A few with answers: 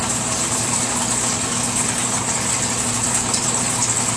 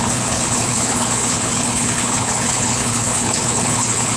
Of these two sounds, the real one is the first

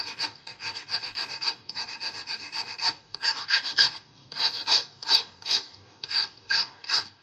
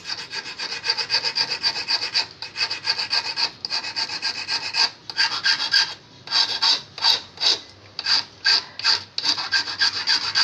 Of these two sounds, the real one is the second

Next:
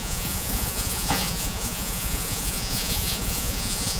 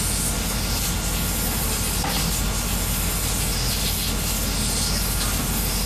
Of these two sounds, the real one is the second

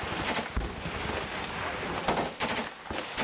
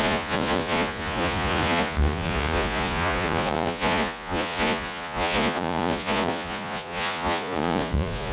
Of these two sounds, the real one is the first